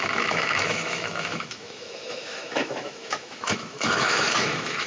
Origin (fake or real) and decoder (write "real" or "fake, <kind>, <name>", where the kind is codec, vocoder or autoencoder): fake, autoencoder, DAC-VAE